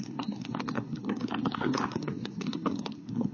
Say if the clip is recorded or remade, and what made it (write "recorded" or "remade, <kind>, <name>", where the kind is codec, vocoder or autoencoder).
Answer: remade, codec, SNAC